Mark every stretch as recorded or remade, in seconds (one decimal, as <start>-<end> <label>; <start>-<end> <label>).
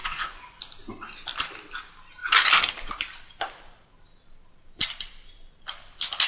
0.0-0.6 remade; 0.6-6.3 recorded